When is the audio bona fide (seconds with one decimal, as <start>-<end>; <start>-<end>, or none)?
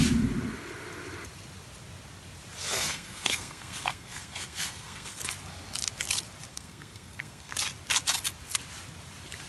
0.0-2.6; 5.2-6.5; 7.5-9.5